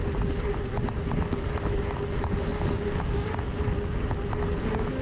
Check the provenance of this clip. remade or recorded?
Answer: recorded